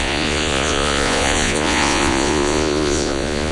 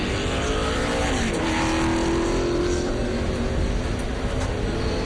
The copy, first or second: first